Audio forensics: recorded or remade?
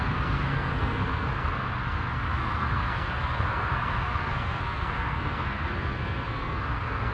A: remade